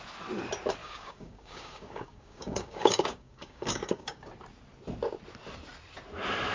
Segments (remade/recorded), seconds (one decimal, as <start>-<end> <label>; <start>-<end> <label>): 0.0-0.8 recorded; 0.8-4.3 remade; 4.3-6.5 recorded